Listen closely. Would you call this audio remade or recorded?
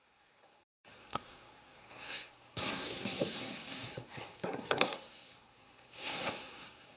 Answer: remade